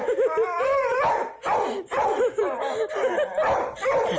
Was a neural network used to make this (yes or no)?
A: yes